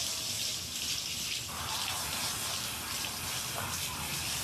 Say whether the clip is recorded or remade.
recorded